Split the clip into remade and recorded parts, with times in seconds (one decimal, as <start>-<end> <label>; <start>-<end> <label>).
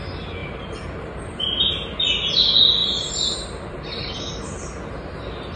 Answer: 0.0-0.4 recorded; 0.4-1.7 remade; 1.7-2.8 recorded; 2.8-4.8 remade; 4.8-5.6 recorded